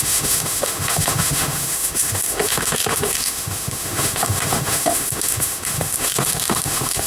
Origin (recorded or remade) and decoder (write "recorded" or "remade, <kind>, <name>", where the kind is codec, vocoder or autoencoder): remade, autoencoder, DAC-VAE